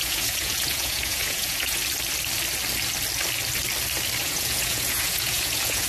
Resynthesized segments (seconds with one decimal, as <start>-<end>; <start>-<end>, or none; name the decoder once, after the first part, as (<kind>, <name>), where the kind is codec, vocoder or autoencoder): 0.0-1.8 (vocoder, Vocos); 4.2-5.9